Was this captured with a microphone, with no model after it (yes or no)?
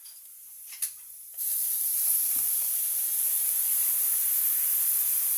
yes